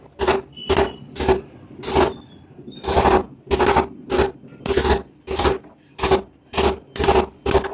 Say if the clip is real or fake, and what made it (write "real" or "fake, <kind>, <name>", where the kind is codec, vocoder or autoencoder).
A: real